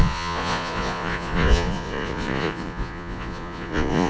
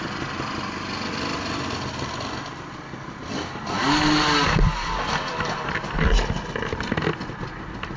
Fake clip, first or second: first